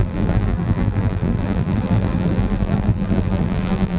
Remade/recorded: remade